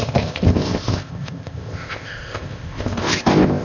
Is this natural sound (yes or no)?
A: no